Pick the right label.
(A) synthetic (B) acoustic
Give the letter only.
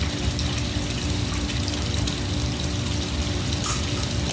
B